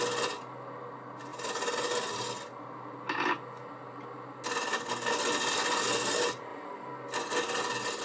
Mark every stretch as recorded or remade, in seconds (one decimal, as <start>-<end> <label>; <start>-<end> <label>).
0.0-8.0 recorded